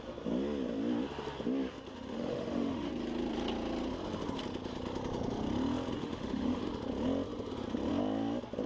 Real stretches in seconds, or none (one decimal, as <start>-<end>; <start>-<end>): 0.0-1.7; 2.9-6.0; 6.6-8.7